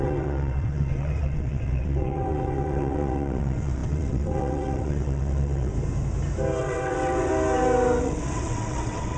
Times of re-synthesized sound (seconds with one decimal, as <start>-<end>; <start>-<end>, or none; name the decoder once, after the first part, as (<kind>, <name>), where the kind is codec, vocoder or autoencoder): 0.0-5.7 (vocoder, WaveNeXt); 6.6-7.3; 8.0-9.2